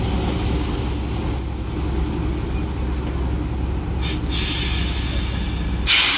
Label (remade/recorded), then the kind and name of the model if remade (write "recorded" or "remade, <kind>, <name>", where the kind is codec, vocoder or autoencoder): recorded